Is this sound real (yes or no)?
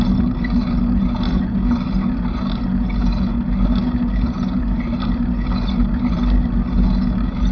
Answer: yes